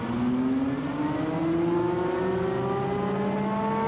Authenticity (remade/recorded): recorded